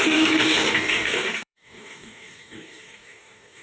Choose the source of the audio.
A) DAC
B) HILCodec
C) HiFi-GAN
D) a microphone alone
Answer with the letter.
A